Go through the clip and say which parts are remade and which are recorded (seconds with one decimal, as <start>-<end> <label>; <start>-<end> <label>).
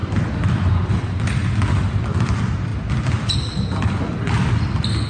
0.0-0.9 remade; 0.9-2.7 recorded; 2.7-4.1 remade; 4.1-5.1 recorded